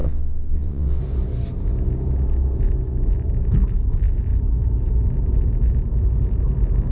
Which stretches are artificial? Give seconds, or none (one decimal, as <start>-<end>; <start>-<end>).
0.0-1.0